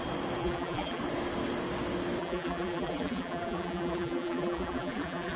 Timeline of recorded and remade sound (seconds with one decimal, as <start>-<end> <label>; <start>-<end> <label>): 0.0-0.4 recorded; 0.4-1.0 remade; 1.0-2.2 recorded; 2.2-5.4 remade